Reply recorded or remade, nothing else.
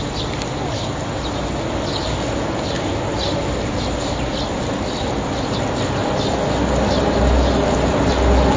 recorded